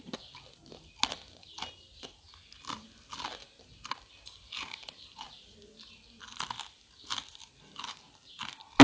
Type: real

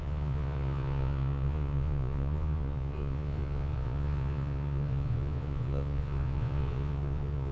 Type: fake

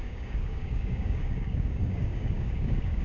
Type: fake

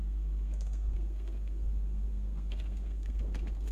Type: fake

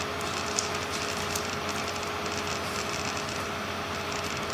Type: real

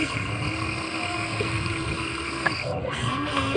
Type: fake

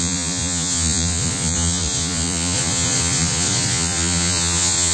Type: fake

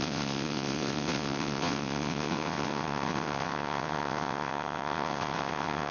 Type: fake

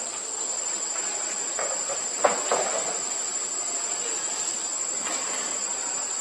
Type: real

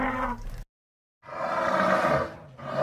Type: real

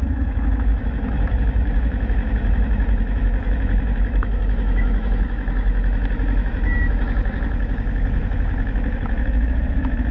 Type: fake